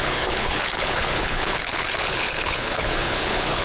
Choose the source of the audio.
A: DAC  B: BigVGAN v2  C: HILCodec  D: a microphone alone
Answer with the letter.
C